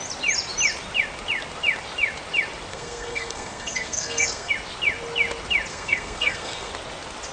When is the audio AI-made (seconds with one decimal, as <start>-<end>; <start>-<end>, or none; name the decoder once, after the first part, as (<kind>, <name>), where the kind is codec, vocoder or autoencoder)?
2.7-4.5 (codec, SNAC); 5.7-6.7